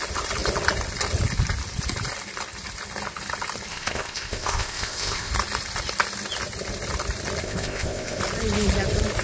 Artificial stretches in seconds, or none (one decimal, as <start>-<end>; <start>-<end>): 3.7-5.3; 7.4-8.2